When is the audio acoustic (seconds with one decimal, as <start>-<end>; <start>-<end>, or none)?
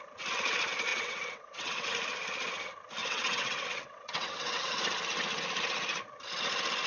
0.0-0.9; 1.9-3.0; 4.8-6.9